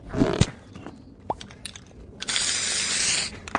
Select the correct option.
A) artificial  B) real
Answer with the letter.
A